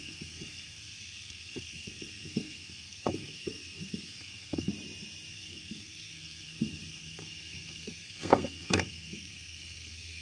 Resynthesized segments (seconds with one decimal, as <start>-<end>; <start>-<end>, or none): 0.0-4.7; 5.3-10.2